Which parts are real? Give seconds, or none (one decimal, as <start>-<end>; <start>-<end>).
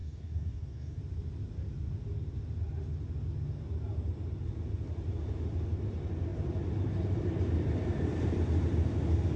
1.0-9.4